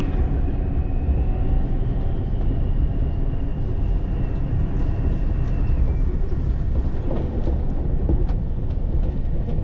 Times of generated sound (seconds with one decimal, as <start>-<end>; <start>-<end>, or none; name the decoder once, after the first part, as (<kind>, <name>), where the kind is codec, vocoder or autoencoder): none